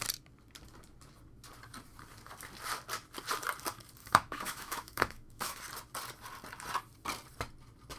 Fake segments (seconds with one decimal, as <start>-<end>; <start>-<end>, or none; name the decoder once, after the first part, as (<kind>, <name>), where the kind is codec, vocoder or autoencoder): 4.0-5.6 (autoencoder, DAC-VAE)

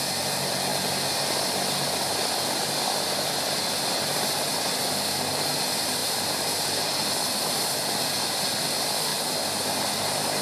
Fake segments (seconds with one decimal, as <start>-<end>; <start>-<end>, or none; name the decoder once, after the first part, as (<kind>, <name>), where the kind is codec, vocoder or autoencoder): none

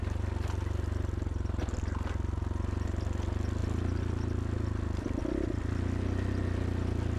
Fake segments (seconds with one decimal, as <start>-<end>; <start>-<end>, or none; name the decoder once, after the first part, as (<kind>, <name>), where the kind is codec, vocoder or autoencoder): none